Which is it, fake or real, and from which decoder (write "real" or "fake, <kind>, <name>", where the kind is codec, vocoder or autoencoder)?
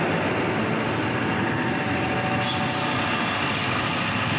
real